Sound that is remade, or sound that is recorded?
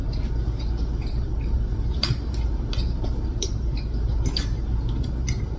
remade